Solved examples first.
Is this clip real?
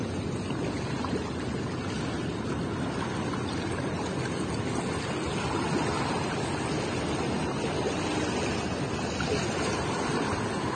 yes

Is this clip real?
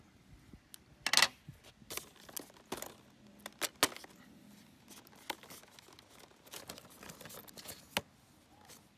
yes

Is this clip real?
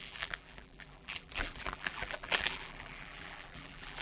no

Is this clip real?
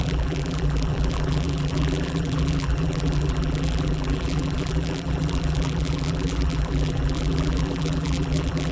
no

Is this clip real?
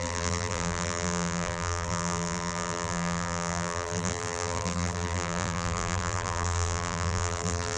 no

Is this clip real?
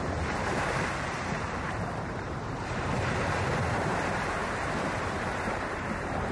no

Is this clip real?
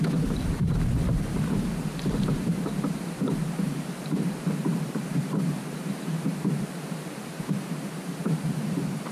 no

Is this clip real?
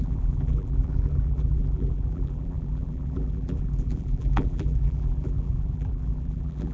no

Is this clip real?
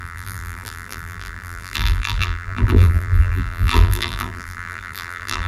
no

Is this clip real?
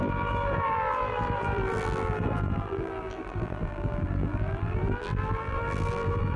no